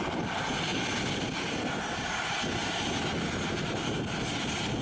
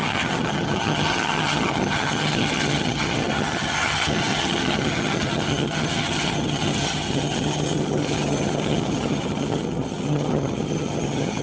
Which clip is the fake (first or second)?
second